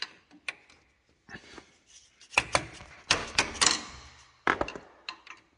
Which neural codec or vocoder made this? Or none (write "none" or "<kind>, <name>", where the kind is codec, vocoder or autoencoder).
none